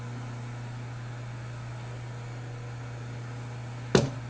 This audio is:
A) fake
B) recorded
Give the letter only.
B